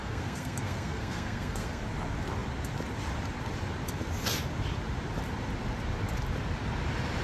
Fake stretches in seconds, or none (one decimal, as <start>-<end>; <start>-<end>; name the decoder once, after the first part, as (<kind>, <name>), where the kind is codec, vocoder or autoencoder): 0.0-1.8 (codec, SNAC)